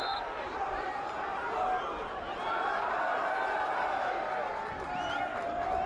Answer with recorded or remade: remade